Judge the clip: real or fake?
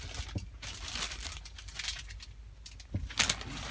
real